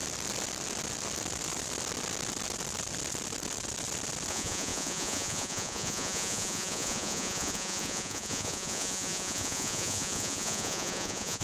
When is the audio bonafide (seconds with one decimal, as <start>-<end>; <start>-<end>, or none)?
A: 0.0-4.3